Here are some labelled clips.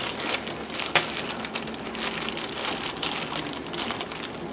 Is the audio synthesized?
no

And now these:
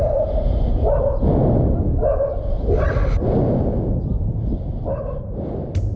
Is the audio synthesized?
no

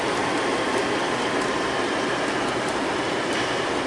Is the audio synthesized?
no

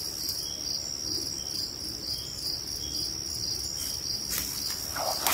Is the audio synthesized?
no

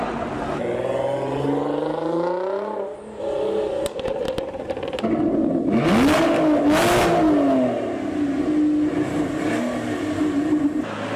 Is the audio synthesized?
no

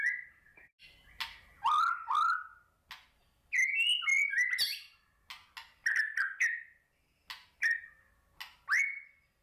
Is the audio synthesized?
no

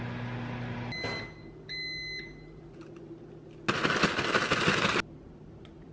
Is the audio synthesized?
no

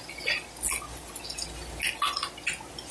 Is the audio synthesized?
no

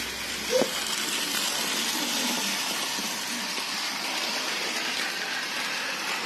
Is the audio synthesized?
no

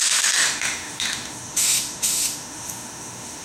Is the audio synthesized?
yes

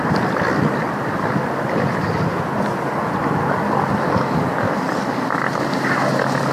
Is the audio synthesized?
no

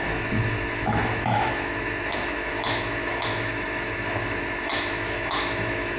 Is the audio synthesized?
yes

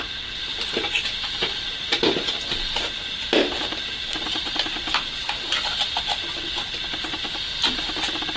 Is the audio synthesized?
no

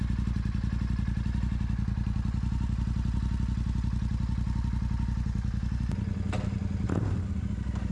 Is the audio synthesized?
no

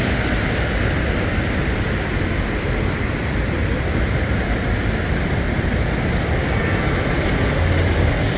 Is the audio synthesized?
no